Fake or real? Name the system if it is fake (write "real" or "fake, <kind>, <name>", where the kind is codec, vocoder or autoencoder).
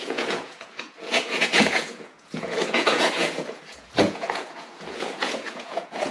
fake, vocoder, Vocos